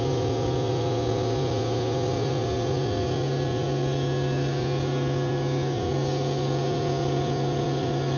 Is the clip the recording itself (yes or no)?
yes